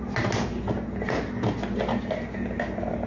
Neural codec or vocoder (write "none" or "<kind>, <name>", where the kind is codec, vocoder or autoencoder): none